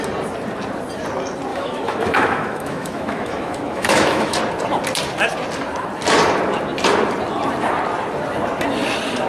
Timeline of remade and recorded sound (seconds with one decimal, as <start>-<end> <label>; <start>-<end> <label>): 0.0-1.5 recorded; 1.5-4.4 remade; 4.4-9.3 recorded